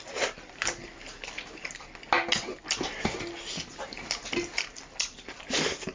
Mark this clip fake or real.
real